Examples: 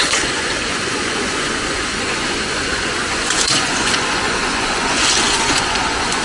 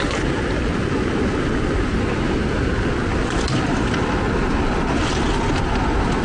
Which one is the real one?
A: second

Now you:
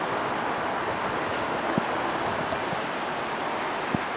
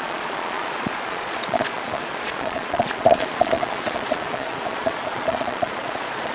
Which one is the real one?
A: first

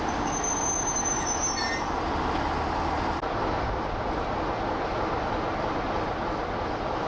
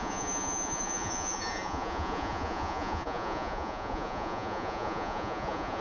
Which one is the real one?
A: first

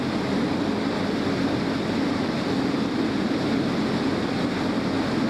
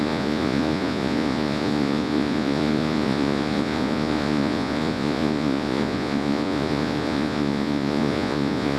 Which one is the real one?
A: first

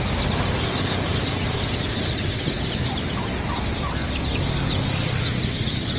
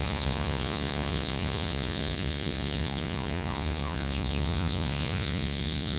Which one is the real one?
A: first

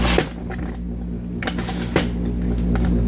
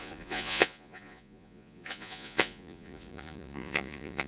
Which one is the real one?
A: first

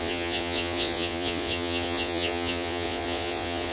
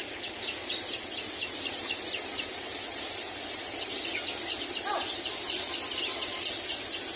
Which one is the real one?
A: second